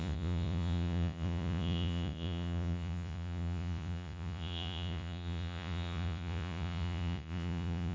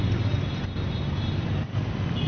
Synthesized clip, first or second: first